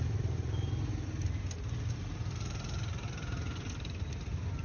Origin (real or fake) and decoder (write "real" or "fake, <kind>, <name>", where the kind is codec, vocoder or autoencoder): real